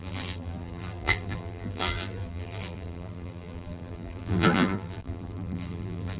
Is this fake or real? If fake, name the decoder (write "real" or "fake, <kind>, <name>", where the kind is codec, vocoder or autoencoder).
fake, vocoder, BigVGAN v2